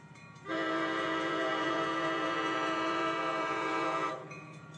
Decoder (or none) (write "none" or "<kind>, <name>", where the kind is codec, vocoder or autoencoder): vocoder, Vocos